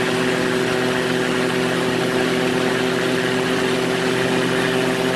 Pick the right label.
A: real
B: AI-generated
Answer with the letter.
A